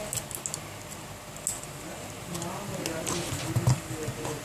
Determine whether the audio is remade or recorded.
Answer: recorded